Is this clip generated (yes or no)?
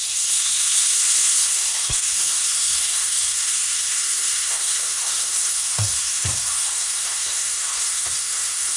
yes